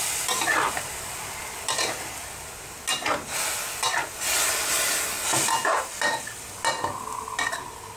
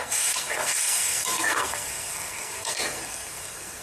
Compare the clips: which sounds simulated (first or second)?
second